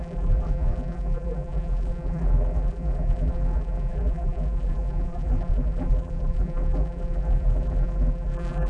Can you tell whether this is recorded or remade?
remade